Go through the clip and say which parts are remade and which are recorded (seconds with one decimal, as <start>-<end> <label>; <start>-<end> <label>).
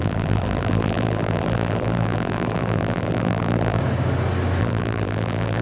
0.0-3.8 remade; 3.8-4.6 recorded; 4.6-5.6 remade